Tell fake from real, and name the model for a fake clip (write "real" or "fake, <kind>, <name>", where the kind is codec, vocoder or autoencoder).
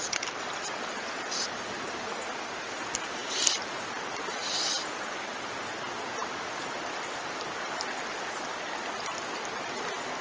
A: real